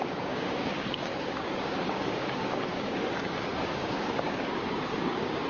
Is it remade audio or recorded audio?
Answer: remade